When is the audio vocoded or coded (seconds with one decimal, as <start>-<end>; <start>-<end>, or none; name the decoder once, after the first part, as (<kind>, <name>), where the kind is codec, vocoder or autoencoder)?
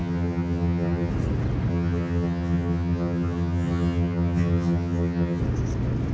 0.0-1.1 (vocoder, HiFi-GAN); 1.7-5.4